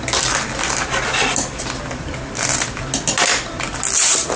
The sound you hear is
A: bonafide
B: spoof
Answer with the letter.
B